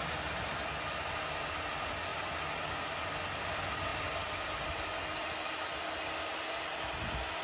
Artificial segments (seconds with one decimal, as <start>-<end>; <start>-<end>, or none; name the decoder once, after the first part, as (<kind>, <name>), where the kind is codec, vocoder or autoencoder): none